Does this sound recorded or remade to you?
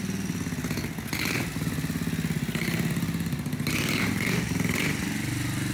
recorded